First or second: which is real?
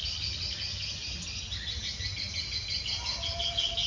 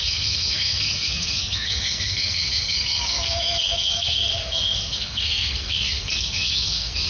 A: first